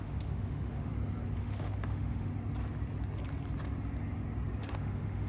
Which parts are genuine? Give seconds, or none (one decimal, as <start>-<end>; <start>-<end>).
0.9-1.4; 2.3-4.6